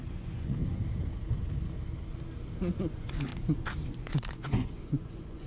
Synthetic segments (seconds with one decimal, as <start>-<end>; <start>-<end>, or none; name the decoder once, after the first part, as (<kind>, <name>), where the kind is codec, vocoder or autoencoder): 0.0-0.6 (vocoder, Vocos); 2.6-3.3; 4.0-5.5